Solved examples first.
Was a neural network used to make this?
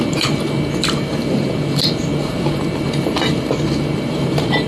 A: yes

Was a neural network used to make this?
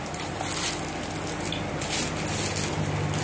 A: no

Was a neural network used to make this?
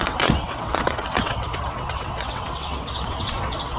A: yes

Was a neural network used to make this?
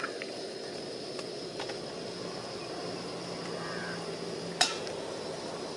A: no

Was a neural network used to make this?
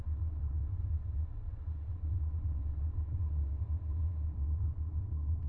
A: yes